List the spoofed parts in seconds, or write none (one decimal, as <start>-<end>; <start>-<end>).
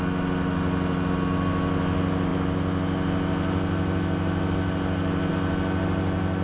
none